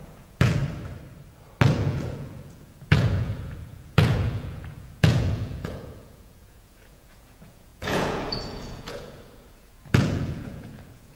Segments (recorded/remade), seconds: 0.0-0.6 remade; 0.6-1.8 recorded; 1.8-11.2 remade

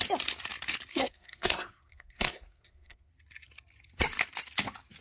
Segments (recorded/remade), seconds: 0.0-0.9 recorded; 0.9-3.1 remade; 3.1-5.0 recorded

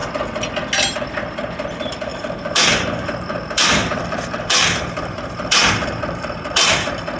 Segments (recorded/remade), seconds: 0.0-0.8 recorded; 0.8-7.2 remade

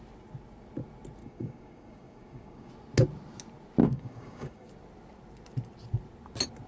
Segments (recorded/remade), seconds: 0.0-1.2 recorded; 1.2-2.7 remade; 2.7-3.8 recorded; 3.8-4.7 remade; 4.7-6.7 recorded